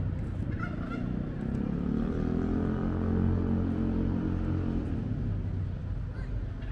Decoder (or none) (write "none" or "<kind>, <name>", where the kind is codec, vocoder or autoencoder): none